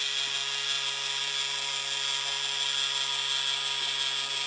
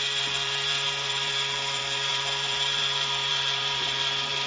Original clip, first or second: first